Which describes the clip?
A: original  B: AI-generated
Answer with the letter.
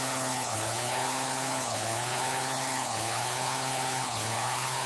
B